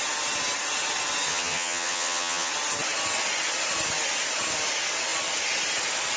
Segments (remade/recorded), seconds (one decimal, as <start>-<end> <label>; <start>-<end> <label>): 0.0-1.3 recorded; 1.3-2.5 remade; 2.5-6.2 recorded